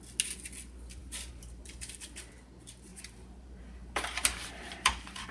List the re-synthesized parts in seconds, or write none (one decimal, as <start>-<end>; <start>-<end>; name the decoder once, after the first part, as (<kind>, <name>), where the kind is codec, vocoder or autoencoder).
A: 1.0-2.3 (vocoder, BigVGAN v2); 2.9-5.3